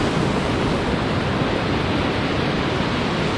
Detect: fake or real real